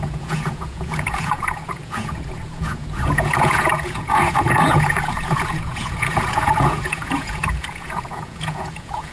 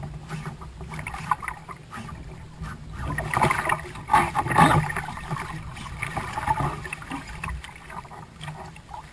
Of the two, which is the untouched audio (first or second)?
second